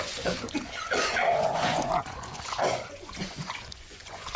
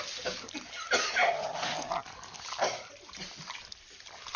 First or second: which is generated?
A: first